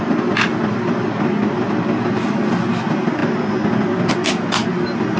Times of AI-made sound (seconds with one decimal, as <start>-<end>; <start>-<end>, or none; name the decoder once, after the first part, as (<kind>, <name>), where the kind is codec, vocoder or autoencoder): none